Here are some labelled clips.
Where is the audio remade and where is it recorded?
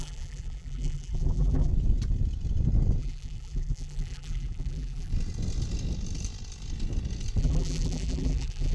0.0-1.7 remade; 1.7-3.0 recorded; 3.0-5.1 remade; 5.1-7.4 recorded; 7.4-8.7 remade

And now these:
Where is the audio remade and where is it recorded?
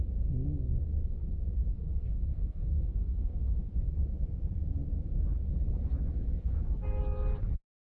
0.0-1.7 recorded; 1.7-3.6 remade; 3.6-7.9 recorded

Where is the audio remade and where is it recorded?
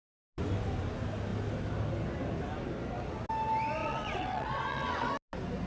0.0-3.8 recorded; 3.8-5.1 remade; 5.1-5.7 recorded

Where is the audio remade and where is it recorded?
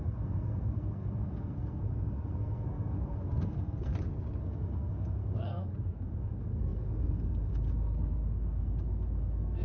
0.0-3.9 remade; 3.9-4.4 recorded; 4.4-9.6 remade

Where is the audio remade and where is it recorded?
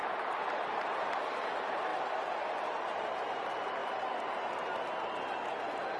0.0-1.9 remade; 1.9-2.9 recorded; 2.9-3.8 remade; 3.8-5.5 recorded; 5.5-6.0 remade